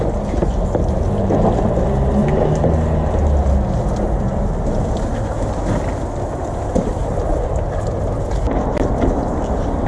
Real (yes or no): yes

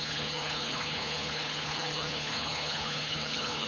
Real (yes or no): no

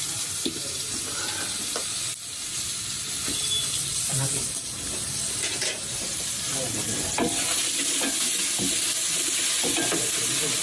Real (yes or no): yes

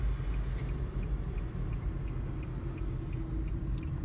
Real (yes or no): yes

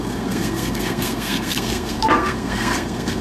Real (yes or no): no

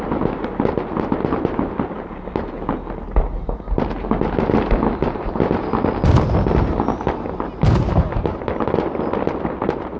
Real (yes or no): yes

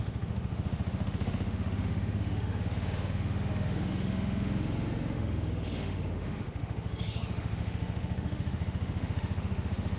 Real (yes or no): no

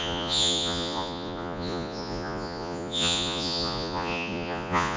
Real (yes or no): no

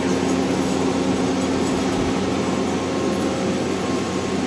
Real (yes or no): yes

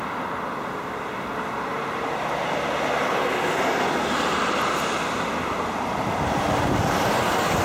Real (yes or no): yes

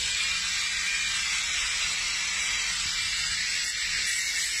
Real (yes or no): yes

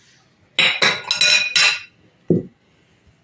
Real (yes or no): yes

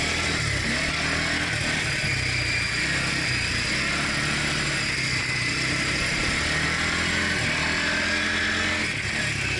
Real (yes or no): yes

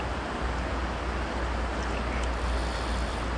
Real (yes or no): yes